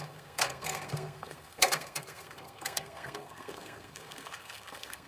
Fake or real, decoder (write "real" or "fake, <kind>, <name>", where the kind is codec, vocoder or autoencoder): fake, codec, SNAC